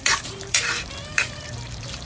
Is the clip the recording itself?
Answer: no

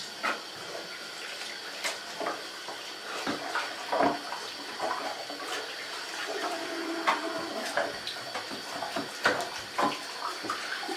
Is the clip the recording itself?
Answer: yes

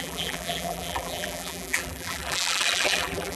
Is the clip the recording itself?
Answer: no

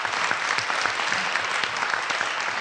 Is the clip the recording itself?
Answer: yes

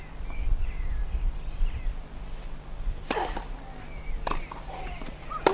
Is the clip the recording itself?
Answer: no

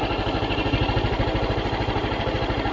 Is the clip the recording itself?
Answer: no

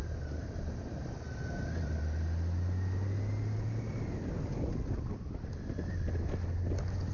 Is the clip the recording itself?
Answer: yes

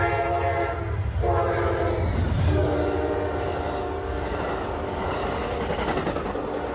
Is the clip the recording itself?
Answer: yes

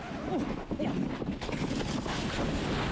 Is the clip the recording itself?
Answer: yes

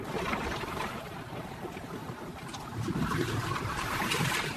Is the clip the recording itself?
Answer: no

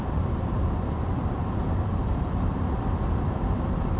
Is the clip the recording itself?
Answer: no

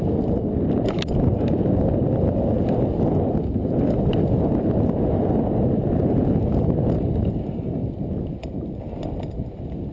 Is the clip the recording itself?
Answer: yes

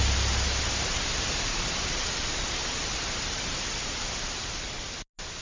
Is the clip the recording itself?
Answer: yes